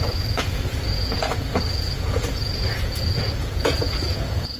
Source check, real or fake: fake